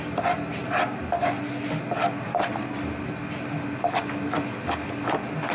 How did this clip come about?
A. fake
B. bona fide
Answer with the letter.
B